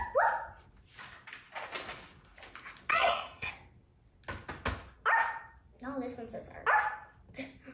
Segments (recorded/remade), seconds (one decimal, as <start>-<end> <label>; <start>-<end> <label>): 0.0-2.9 recorded; 2.9-3.5 remade; 3.5-7.7 recorded